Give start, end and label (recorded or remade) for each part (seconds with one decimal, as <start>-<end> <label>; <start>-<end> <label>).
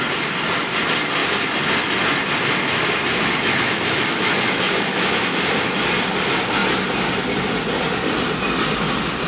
0.0-3.2 recorded; 3.2-5.8 remade; 5.8-9.3 recorded